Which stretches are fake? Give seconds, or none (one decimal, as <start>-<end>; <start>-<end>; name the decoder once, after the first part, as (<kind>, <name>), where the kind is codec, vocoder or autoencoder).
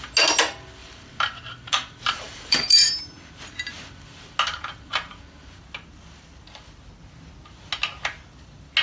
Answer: 0.8-2.9 (vocoder, BigVGAN v2); 4.5-5.2